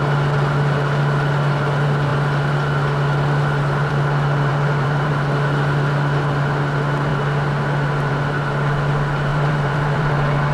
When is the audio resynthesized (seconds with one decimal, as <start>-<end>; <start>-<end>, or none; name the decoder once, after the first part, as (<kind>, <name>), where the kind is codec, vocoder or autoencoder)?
4.5-5.1 (vocoder, BigVGAN v2); 9.3-10.1